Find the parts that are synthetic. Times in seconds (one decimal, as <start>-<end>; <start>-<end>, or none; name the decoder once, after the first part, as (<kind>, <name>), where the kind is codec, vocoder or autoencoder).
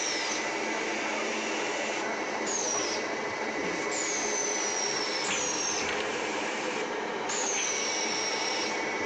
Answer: 4.4-5.0 (vocoder, BigVGAN v2); 6.1-7.1